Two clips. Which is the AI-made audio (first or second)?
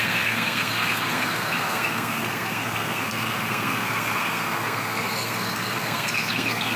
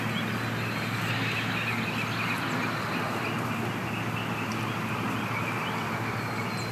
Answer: first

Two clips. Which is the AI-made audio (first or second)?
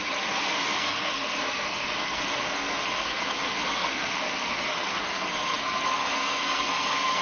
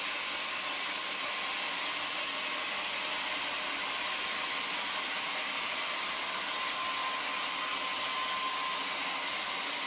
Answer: first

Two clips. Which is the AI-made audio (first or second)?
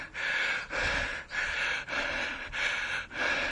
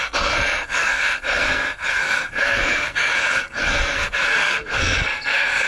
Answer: second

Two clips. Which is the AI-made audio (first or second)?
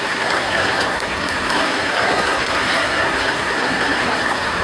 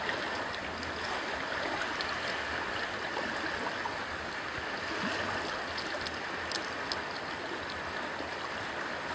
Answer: first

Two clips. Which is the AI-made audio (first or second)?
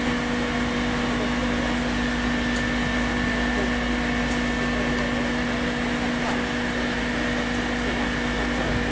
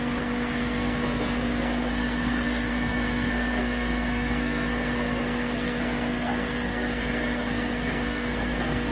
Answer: second